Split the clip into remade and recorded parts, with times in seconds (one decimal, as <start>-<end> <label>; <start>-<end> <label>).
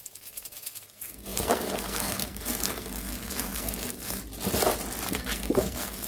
0.0-4.2 remade; 4.2-5.1 recorded; 5.1-6.1 remade